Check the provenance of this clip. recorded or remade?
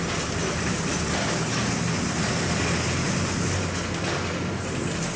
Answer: recorded